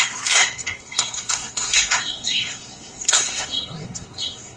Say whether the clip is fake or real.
fake